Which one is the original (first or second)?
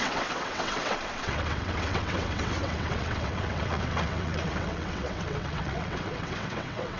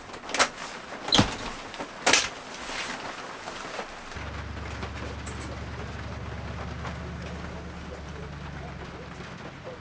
second